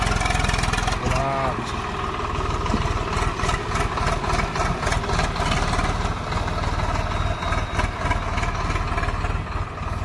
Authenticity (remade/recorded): recorded